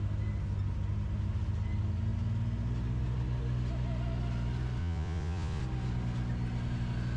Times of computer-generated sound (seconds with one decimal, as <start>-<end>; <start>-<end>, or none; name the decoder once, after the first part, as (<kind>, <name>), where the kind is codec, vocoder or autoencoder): 4.8-5.6 (vocoder, Vocos)